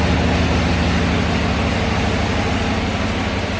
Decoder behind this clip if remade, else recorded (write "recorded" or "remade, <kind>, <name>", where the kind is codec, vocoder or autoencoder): recorded